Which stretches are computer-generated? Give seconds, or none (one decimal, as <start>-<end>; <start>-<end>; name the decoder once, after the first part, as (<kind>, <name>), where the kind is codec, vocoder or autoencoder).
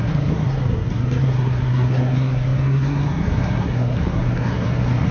0.0-5.1 (codec, SNAC)